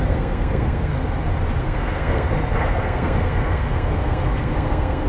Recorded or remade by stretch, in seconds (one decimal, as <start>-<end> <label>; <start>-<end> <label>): 0.0-0.9 remade; 0.9-1.6 recorded; 1.6-5.1 remade